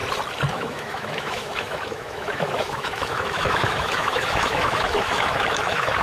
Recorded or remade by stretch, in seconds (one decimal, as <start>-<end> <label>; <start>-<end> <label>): 0.0-0.5 recorded; 0.5-6.0 remade